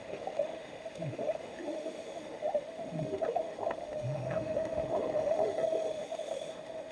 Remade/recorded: remade